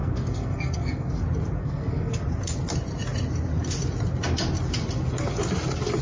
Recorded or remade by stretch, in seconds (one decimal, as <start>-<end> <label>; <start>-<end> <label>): 0.0-1.2 remade; 1.2-1.6 recorded; 1.6-2.2 remade; 2.2-6.0 recorded